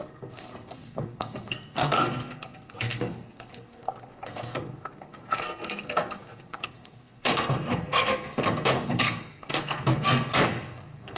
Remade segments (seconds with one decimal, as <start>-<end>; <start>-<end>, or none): 0.0-11.2